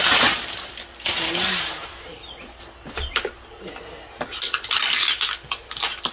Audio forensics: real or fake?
real